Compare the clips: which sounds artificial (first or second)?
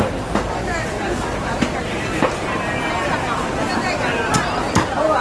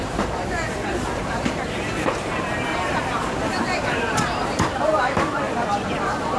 second